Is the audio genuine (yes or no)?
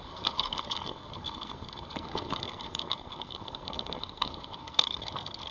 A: no